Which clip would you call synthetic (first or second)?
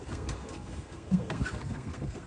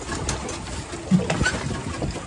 first